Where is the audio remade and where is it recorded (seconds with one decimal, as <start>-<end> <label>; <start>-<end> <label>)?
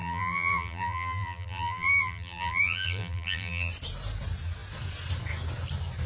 0.0-3.7 remade; 3.7-6.1 recorded